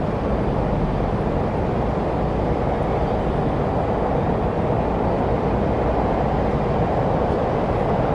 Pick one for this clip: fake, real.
real